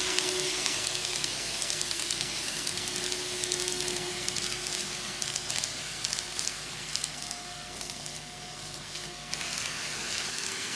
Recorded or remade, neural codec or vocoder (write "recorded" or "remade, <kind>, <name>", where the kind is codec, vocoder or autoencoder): remade, codec, SNAC